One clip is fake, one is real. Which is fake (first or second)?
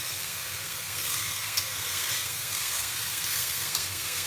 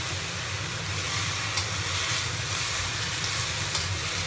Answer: first